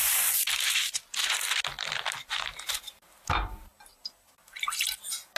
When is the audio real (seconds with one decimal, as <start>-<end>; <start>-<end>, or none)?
1.2-2.3; 3.7-5.4